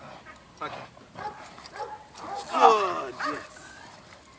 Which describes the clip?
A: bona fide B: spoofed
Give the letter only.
A